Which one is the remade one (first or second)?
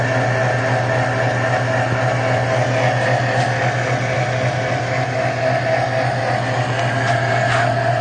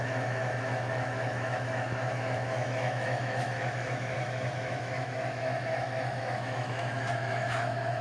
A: second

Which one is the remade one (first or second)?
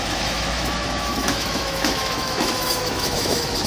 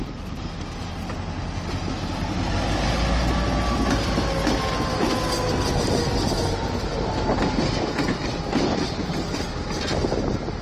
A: first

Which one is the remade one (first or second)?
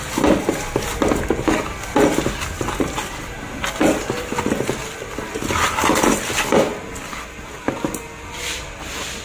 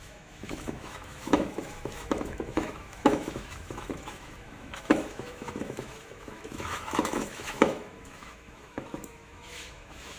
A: second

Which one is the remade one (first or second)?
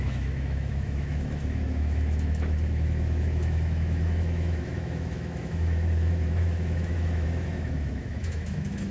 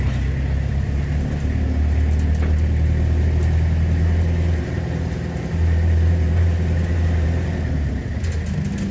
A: first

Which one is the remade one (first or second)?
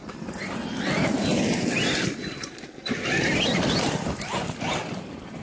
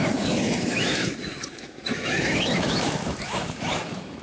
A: second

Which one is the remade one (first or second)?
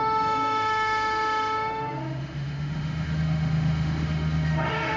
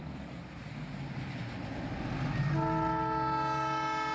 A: first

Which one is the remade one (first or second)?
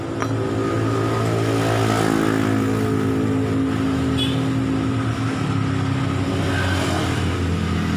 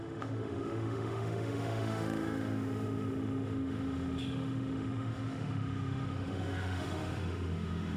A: second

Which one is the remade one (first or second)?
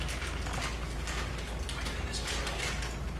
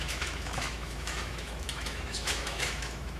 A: second